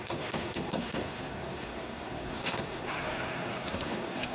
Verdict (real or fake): fake